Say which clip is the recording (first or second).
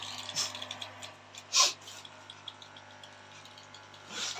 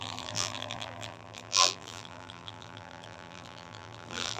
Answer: first